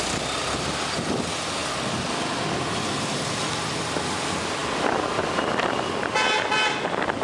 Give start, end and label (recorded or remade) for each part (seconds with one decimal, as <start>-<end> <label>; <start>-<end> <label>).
0.0-7.2 recorded